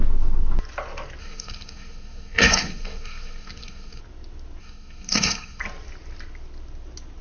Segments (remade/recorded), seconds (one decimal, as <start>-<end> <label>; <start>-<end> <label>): 0.0-1.2 recorded; 1.2-4.0 remade; 4.0-4.6 recorded; 4.6-5.6 remade; 5.6-7.2 recorded